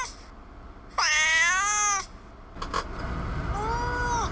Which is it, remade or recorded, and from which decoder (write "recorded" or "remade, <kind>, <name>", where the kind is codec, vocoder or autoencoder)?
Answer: recorded